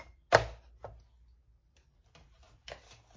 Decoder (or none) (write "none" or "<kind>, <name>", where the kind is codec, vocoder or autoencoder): none